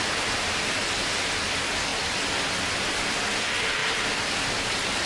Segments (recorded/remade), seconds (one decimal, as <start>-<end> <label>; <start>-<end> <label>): 0.0-5.1 recorded